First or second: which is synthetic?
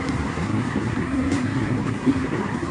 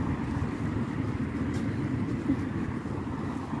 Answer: first